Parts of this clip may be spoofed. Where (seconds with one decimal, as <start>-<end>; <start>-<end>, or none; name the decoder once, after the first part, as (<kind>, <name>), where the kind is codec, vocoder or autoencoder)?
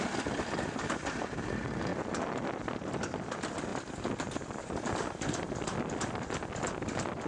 none